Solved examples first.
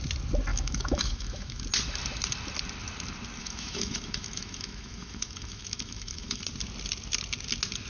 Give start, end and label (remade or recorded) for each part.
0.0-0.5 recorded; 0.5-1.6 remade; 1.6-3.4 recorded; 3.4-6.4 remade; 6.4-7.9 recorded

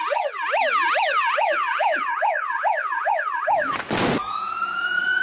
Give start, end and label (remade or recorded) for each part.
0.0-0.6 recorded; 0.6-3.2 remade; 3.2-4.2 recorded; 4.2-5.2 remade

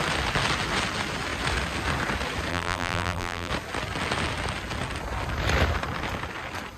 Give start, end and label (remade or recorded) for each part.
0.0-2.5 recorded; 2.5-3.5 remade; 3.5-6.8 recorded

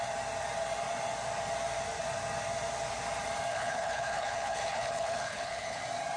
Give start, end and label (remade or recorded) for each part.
0.0-3.5 recorded; 3.5-5.8 remade; 5.8-6.2 recorded